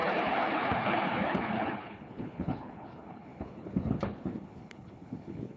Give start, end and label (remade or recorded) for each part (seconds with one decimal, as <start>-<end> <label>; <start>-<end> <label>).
0.0-5.6 remade